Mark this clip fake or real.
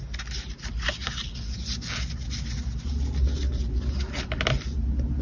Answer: real